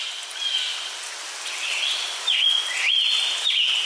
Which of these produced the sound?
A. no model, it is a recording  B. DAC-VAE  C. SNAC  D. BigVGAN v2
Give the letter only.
A